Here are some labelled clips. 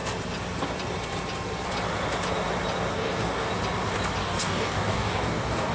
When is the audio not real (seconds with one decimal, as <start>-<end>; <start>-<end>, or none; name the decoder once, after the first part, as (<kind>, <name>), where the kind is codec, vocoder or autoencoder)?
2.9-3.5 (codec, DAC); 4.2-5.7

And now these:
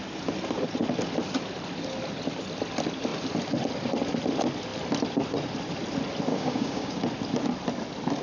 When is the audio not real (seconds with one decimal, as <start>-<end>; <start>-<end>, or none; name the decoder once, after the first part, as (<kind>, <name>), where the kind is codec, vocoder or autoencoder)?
6.3-7.0 (codec, DAC)

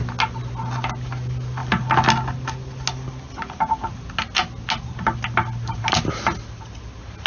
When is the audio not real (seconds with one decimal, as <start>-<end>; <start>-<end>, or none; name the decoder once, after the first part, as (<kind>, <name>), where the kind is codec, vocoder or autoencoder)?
none

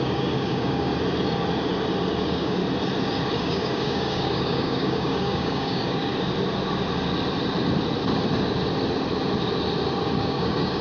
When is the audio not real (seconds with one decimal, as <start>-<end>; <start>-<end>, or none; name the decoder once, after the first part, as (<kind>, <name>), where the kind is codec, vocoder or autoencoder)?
0.0-0.9 (codec, DAC); 2.2-2.6; 3.4-6.1; 10.2-10.8